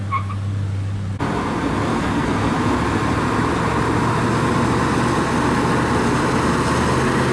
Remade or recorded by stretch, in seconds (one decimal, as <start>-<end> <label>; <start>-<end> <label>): 0.0-1.9 recorded; 1.9-2.5 remade; 2.5-7.3 recorded